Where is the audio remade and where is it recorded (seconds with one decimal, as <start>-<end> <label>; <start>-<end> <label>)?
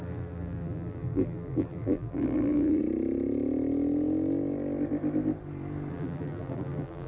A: 0.0-2.8 remade; 2.8-5.9 recorded; 5.9-7.1 remade